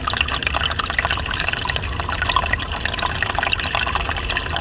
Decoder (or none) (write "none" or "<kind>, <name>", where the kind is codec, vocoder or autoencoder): none